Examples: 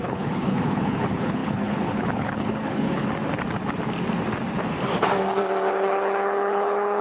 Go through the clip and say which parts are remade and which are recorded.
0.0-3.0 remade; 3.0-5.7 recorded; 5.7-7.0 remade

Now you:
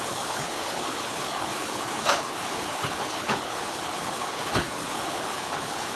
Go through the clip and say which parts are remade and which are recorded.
0.0-6.0 remade

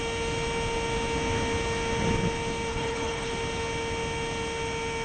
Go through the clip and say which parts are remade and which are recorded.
0.0-2.7 recorded; 2.7-3.3 remade; 3.3-5.0 recorded

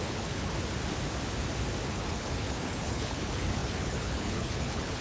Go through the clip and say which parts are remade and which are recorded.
0.0-0.5 remade; 0.5-1.9 recorded; 1.9-5.0 remade